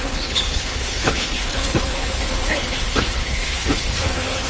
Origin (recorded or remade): remade